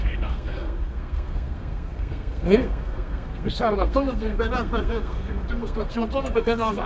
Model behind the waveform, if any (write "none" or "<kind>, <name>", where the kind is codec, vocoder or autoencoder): codec, SNAC